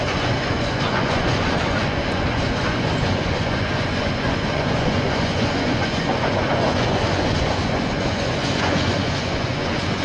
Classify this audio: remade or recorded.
remade